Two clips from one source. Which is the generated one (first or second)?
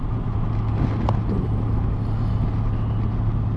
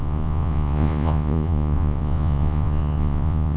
second